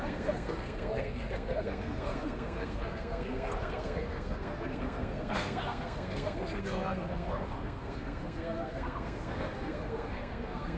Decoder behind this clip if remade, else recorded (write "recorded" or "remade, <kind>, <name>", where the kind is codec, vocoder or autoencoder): remade, codec, SNAC